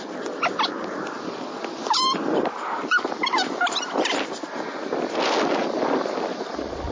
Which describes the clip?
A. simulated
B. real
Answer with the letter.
B